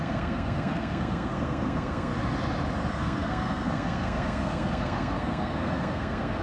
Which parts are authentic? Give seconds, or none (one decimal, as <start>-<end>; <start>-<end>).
2.1-2.9